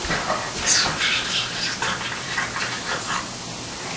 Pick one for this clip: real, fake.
real